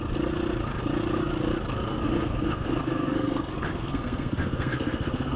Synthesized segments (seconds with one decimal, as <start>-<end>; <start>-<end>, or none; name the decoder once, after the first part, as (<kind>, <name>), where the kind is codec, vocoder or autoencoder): 1.9-5.4 (codec, SNAC)

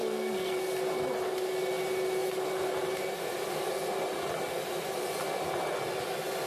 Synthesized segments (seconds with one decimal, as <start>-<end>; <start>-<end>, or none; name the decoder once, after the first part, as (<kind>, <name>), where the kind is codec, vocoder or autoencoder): 0.0-0.6 (codec, SNAC)

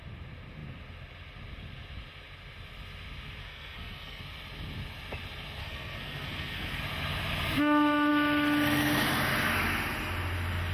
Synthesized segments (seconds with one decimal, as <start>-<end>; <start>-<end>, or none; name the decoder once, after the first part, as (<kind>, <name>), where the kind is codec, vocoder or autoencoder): 3.4-4.2 (codec, SNAC); 5.6-6.8

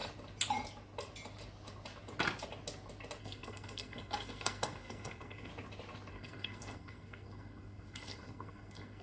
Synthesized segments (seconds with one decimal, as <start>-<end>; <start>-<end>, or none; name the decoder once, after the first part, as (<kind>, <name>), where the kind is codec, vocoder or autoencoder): 3.2-5.5 (codec, SNAC); 6.1-9.0

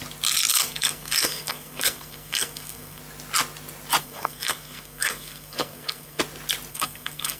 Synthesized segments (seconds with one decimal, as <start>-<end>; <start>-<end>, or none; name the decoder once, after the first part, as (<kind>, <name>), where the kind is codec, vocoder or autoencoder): 0.5-3.0 (codec, SNAC); 4.0-6.2; 6.7-7.4

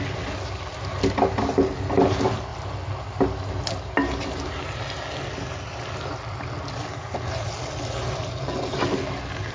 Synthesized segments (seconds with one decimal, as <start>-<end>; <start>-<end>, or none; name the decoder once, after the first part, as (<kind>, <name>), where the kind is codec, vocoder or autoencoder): none